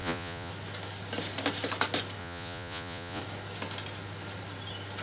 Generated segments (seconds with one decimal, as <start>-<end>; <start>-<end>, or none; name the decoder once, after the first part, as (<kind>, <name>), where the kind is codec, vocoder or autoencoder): 0.0-0.5 (vocoder, Vocos); 2.2-3.2